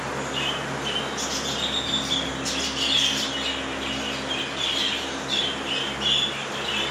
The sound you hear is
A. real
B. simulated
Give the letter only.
A